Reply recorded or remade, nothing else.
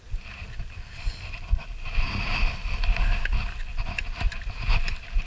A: recorded